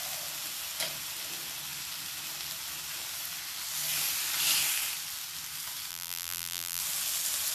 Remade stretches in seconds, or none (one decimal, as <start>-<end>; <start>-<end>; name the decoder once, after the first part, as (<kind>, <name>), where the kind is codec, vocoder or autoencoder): 5.9-6.8 (vocoder, BigVGAN v2)